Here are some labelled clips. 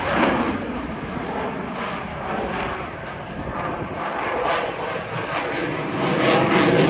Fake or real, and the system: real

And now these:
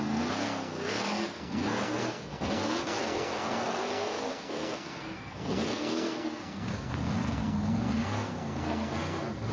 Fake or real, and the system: fake, codec, SNAC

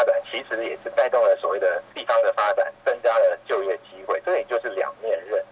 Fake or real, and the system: real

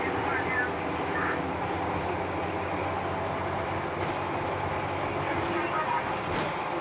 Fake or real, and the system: real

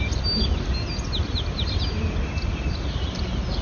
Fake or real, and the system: real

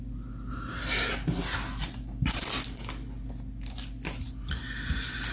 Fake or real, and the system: real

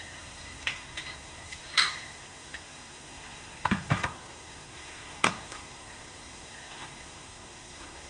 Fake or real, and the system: fake, codec, SNAC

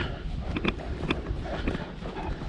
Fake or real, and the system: real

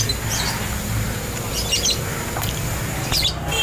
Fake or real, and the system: real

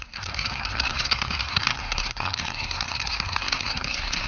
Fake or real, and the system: fake, codec, SNAC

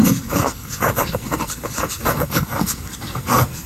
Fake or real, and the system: fake, codec, SNAC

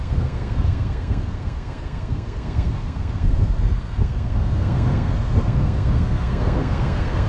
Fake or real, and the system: fake, codec, SNAC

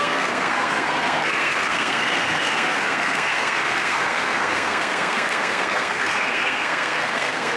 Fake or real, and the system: fake, codec, SNAC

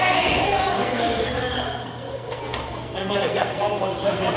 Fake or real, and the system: fake, codec, SNAC